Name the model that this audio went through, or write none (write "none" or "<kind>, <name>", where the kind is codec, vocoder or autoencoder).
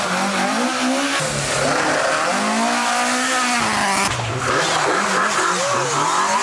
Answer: none